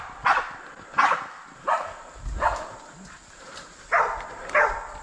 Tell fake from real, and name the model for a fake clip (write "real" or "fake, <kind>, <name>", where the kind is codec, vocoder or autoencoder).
real